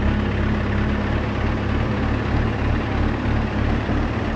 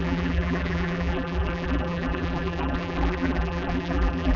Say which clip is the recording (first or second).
first